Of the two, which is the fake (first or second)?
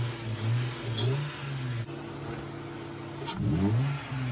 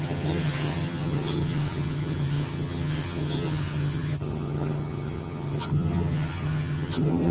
second